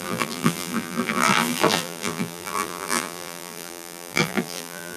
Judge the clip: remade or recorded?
remade